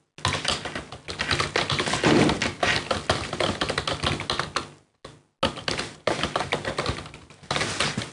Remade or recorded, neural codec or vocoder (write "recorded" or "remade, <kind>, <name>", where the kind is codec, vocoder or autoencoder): recorded